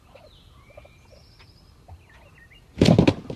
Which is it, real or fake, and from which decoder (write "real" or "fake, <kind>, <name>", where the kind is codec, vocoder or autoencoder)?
real